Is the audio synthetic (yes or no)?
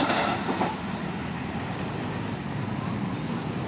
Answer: no